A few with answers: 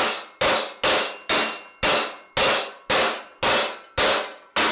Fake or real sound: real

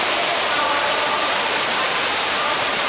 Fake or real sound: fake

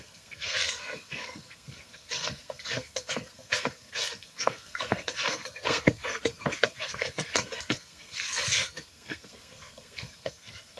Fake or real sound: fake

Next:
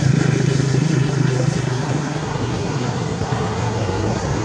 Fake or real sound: fake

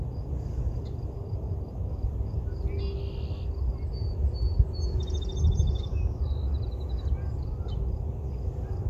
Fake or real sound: real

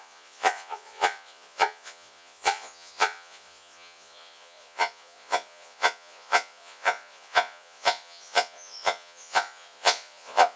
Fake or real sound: fake